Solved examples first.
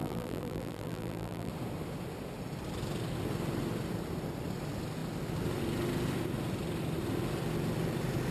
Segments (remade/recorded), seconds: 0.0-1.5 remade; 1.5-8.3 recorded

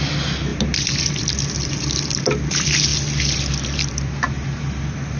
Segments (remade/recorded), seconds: 0.0-5.2 recorded

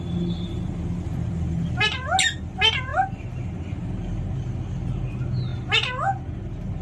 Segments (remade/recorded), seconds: 0.0-6.8 recorded

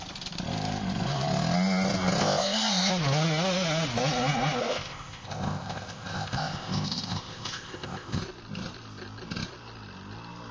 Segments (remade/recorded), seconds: 0.0-2.2 recorded; 2.2-2.9 remade; 2.9-4.6 recorded; 4.6-8.2 remade; 8.2-10.5 recorded

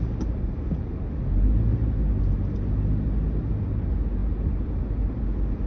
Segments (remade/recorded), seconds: 0.0-5.7 recorded

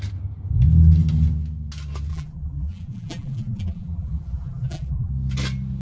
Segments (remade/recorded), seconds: 0.0-2.1 recorded; 2.1-5.1 remade; 5.1-5.8 recorded